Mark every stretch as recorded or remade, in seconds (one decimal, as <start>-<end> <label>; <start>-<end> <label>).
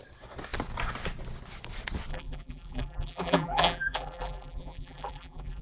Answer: 0.0-2.1 recorded; 2.1-5.6 remade